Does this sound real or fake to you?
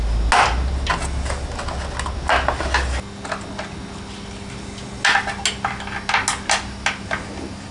real